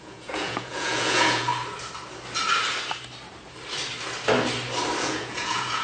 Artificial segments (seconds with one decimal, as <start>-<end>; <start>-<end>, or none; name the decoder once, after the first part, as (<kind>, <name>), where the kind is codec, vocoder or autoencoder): 0.0-1.5 (vocoder, Vocos); 5.0-5.8